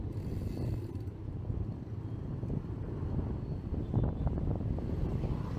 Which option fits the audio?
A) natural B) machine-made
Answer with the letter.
A